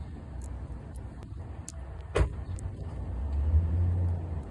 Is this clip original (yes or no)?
yes